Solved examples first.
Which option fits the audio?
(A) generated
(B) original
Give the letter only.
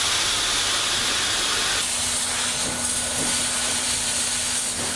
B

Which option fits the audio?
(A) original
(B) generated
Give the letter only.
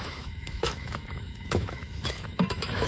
B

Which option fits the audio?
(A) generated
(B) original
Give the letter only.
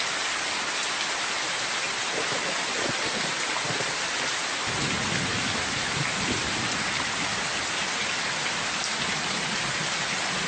B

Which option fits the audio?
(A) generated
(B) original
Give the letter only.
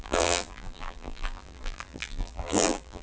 A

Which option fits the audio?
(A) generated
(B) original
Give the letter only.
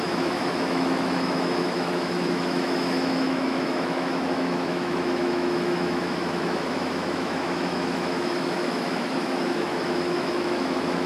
A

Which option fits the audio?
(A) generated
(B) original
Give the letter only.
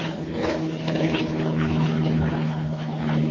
A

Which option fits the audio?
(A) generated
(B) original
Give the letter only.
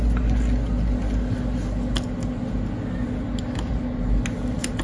B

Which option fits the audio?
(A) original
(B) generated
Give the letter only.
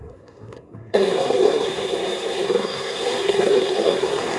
B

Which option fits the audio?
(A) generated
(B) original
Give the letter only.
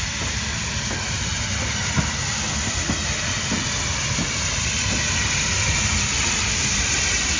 B